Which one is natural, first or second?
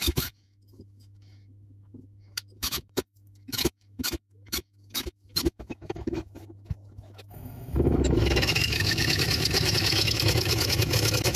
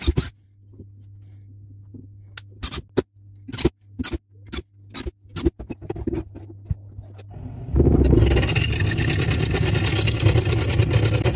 second